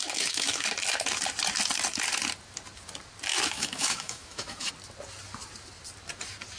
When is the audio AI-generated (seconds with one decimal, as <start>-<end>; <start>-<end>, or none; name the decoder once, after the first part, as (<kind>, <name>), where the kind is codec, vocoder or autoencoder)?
0.0-0.7 (autoencoder, DAC-VAE); 3.3-4.7